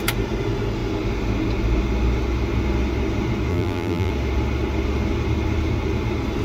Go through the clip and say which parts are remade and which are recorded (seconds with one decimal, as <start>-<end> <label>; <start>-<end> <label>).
0.0-3.5 recorded; 3.5-4.1 remade; 4.1-6.4 recorded